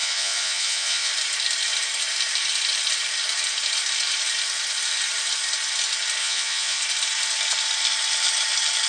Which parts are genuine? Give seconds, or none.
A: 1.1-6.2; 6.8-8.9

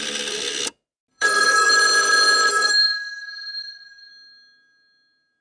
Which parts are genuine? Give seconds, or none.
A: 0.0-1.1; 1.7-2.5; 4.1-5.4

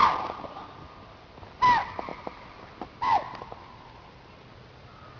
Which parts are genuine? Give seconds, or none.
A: 0.0-5.2